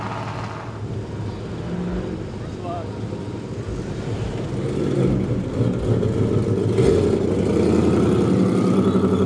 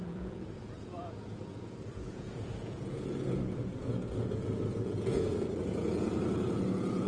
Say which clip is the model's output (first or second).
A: second